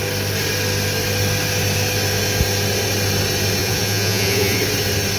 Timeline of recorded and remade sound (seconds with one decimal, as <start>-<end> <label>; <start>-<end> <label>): 0.0-3.6 recorded; 3.6-4.6 remade; 4.6-5.2 recorded